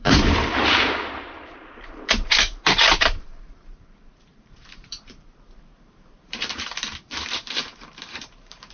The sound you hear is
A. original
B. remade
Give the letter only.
B